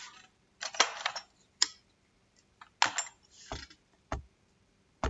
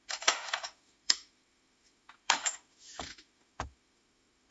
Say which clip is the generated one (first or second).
second